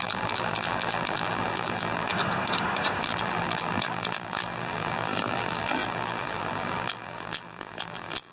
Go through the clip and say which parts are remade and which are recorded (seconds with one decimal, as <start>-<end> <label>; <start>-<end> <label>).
0.0-2.1 remade; 2.1-3.0 recorded; 3.0-8.3 remade